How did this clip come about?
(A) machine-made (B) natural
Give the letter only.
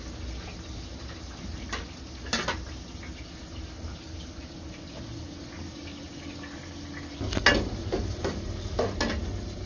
B